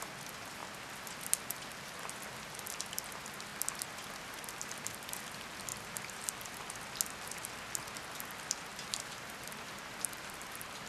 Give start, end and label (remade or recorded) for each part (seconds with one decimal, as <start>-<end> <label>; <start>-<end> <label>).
0.0-5.7 recorded; 5.7-6.5 remade; 6.5-8.7 recorded; 8.7-10.9 remade